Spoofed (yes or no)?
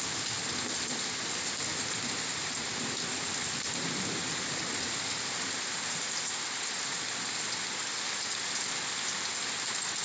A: no